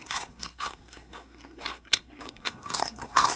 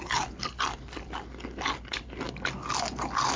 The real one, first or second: second